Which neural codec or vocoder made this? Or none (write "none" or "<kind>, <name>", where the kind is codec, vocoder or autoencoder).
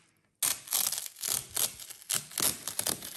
none